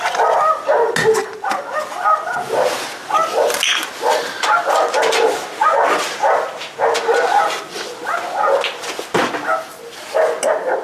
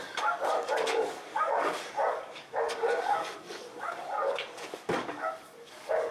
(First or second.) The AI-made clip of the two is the second